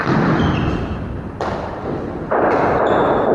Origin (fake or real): real